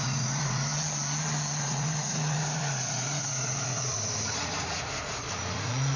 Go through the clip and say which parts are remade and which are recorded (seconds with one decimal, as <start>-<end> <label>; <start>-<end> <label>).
0.0-0.7 remade; 0.7-1.6 recorded; 1.6-6.0 remade